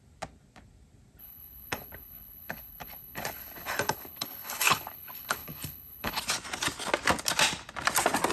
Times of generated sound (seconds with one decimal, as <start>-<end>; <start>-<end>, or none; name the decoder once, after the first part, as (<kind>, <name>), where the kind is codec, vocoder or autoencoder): 1.2-6.2 (codec, HILCodec)